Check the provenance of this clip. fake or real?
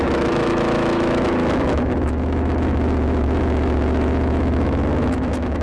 fake